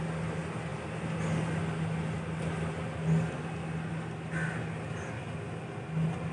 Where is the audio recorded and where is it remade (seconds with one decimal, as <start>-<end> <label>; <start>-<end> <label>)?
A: 0.0-6.3 recorded